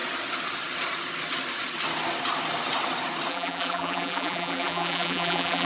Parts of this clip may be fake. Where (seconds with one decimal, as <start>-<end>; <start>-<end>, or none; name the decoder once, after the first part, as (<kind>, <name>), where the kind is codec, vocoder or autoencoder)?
3.3-5.6 (vocoder, BigVGAN v2)